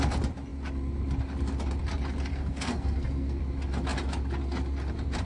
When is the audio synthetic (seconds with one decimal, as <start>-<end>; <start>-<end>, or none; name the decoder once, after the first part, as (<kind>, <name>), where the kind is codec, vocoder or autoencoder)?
2.3-3.4 (codec, SNAC)